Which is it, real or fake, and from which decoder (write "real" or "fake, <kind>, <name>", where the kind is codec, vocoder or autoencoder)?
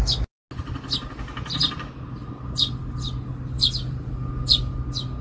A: real